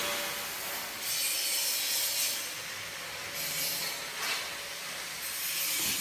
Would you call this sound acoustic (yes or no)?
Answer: yes